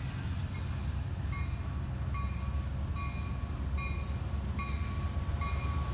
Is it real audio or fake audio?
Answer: real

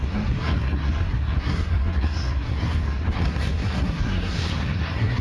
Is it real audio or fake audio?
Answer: fake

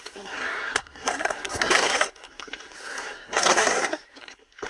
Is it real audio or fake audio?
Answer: fake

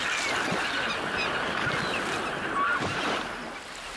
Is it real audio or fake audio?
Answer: real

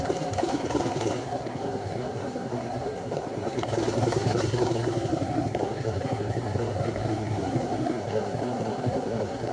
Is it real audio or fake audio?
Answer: fake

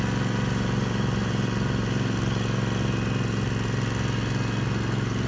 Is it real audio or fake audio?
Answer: real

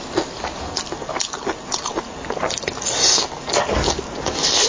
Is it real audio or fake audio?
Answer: real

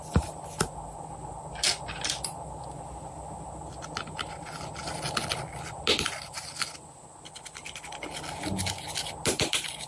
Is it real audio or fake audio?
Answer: real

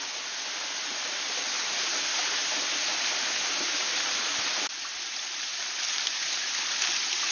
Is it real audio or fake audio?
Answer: real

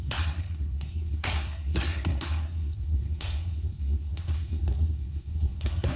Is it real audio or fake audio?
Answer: fake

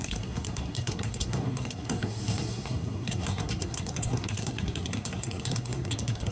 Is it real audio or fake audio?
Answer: fake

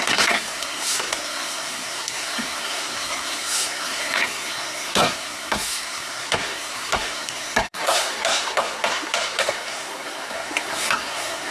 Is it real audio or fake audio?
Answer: fake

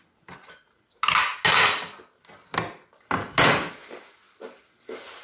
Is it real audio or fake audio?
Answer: real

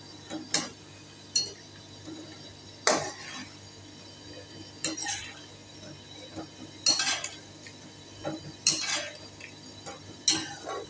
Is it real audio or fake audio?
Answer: real